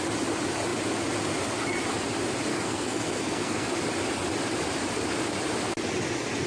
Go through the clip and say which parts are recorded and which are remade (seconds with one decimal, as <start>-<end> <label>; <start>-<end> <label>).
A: 0.0-2.5 recorded; 2.5-3.7 remade; 3.7-6.5 recorded